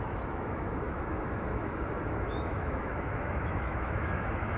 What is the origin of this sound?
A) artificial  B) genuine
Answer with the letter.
A